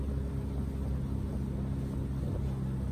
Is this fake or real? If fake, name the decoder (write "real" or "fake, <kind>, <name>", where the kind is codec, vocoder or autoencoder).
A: real